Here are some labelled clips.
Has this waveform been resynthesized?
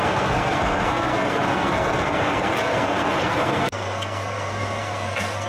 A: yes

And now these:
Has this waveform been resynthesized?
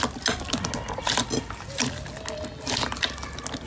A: no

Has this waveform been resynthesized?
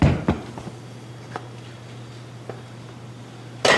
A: no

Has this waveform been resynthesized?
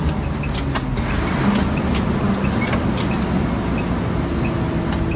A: no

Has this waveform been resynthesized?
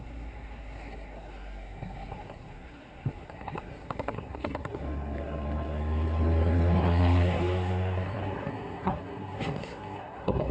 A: yes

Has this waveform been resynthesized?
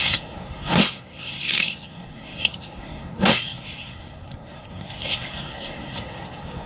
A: yes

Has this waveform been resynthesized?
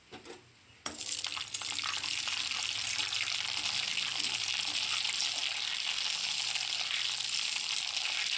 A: no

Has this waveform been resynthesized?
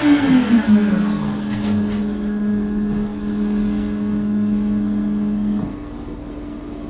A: yes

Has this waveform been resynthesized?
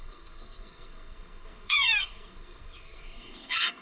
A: yes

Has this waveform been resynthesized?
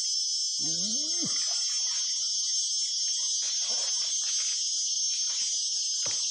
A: no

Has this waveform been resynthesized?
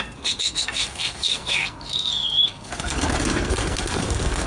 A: yes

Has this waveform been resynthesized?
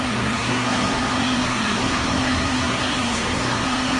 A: yes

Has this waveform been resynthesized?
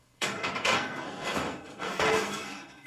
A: yes